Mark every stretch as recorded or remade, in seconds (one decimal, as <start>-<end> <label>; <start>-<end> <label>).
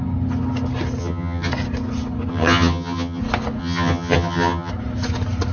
0.0-1.0 recorded; 1.0-1.5 remade; 1.5-2.3 recorded; 2.3-3.2 remade; 3.2-3.6 recorded; 3.6-4.7 remade; 4.7-5.5 recorded